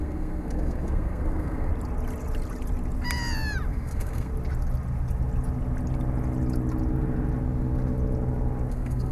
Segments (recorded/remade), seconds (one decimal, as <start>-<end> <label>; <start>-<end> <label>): 0.0-1.7 remade; 1.7-3.7 recorded; 3.7-4.3 remade; 4.3-8.7 recorded; 8.7-9.1 remade